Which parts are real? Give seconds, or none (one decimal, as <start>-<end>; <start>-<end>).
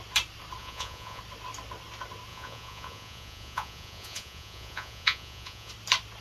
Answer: 0.0-0.6; 1.2-2.3; 5.7-6.2